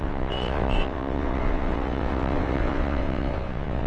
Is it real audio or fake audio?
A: fake